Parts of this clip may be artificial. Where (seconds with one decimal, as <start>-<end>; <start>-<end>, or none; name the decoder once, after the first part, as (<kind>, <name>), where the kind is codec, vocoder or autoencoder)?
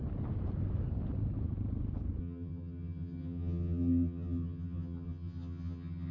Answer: 2.2-6.1 (vocoder, HiFi-GAN)